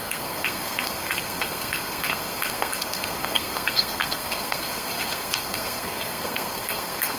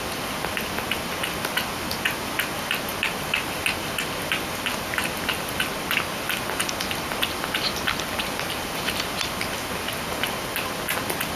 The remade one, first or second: first